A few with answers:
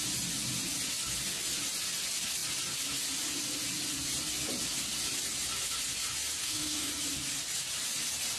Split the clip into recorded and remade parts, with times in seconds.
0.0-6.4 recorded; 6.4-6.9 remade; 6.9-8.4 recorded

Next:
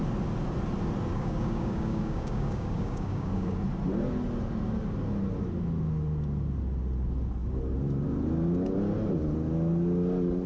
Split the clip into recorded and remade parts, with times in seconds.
0.0-1.1 recorded; 1.1-3.6 remade; 3.6-10.5 recorded

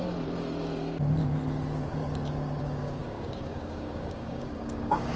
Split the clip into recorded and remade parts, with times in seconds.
0.0-2.6 recorded; 2.6-5.2 remade

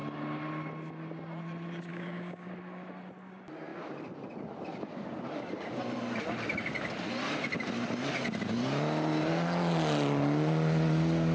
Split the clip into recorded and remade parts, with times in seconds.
0.0-1.9 recorded; 1.9-2.5 remade; 2.5-11.3 recorded

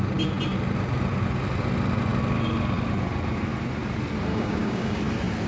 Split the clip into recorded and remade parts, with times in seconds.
0.0-4.3 recorded; 4.3-5.0 remade; 5.0-5.5 recorded

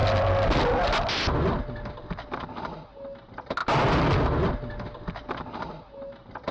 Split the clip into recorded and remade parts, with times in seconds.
0.0-6.5 recorded